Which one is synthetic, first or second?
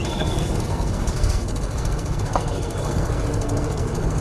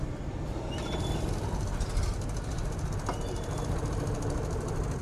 first